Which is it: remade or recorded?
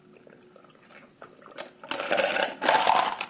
recorded